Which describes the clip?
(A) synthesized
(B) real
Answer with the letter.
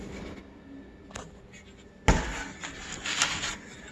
B